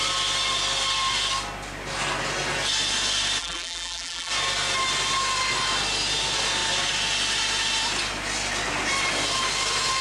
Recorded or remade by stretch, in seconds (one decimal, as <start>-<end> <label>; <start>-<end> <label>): 0.0-3.4 recorded; 3.4-4.3 remade; 4.3-10.0 recorded